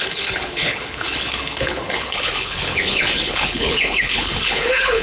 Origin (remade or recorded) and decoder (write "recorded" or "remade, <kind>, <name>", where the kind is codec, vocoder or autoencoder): remade, codec, HILCodec